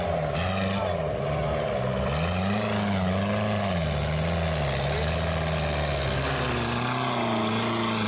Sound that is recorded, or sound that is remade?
recorded